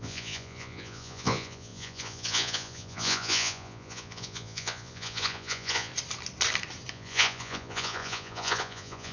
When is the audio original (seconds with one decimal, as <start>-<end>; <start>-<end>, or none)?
5.9-6.9